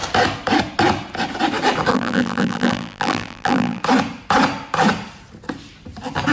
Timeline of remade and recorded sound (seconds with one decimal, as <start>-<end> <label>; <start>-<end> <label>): 0.0-1.9 recorded; 1.9-3.8 remade; 3.8-6.3 recorded